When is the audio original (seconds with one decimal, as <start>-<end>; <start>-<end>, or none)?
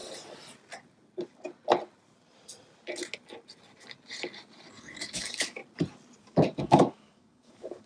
0.0-4.7; 5.6-6.2